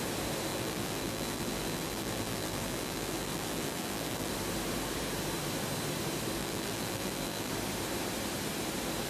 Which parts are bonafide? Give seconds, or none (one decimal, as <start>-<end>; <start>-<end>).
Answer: 0.0-0.5; 4.3-6.4; 7.5-9.1